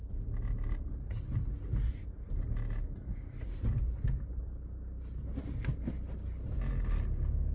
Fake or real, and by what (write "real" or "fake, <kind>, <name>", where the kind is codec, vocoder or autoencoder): real